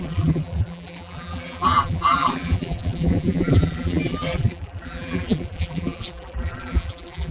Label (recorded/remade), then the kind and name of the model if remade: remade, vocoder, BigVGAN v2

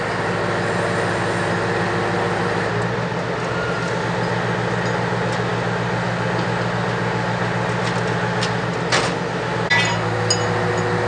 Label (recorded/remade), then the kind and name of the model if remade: recorded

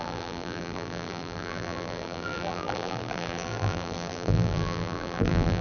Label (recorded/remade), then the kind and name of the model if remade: remade, vocoder, BigVGAN v2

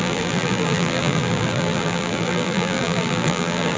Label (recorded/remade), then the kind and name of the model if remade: remade, vocoder, BigVGAN v2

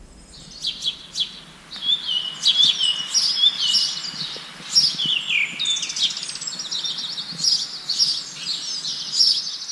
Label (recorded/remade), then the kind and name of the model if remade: recorded